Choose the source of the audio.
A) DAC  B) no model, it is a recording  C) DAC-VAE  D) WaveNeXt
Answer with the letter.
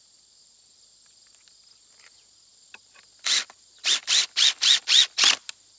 B